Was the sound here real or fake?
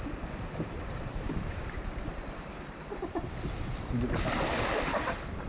fake